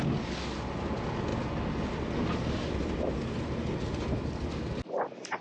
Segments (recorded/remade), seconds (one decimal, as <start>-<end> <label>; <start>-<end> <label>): 0.0-5.4 recorded